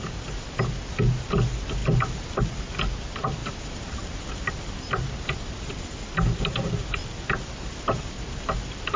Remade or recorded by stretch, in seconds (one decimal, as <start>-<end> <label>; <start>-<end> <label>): 0.0-1.8 recorded; 1.8-2.4 remade; 2.4-3.4 recorded; 3.4-5.7 remade; 5.7-9.0 recorded

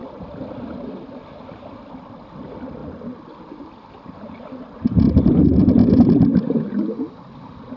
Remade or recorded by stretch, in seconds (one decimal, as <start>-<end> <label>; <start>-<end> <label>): 0.0-0.9 remade; 0.9-6.3 recorded; 6.3-7.3 remade; 7.3-7.8 recorded